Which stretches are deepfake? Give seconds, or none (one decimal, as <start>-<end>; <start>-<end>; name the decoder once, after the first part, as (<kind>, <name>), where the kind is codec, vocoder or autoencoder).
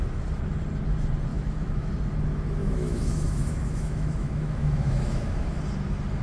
1.3-1.9 (autoencoder, DAC-VAE); 2.6-5.6